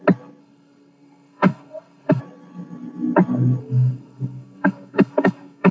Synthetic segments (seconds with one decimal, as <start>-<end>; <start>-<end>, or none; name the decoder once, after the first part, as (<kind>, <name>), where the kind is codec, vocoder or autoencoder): 0.4-2.2 (codec, SNAC); 3.6-5.7